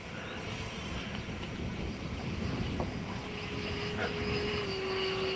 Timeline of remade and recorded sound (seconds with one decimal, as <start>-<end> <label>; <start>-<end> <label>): 0.0-3.2 recorded; 3.2-4.5 remade; 4.5-5.4 recorded